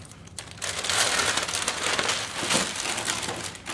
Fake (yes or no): no